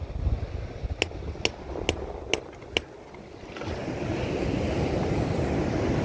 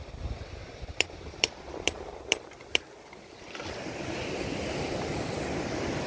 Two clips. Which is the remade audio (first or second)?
second